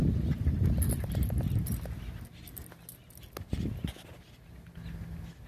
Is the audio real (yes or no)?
yes